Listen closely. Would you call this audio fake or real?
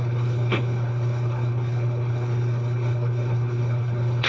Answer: fake